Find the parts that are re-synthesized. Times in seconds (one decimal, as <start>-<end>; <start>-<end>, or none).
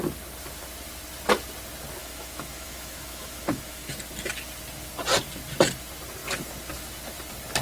2.0-3.9